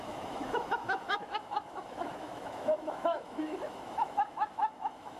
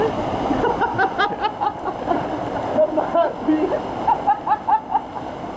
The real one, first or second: second